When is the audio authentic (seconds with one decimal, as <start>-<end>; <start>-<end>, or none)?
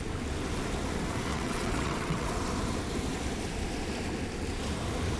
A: 0.0-1.3; 2.4-5.2